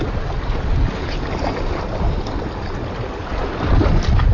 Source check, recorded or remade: recorded